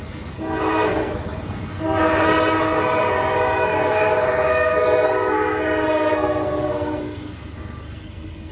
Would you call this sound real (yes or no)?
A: no